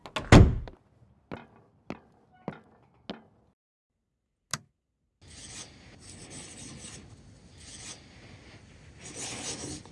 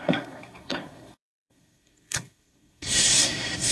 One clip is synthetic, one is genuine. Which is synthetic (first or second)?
second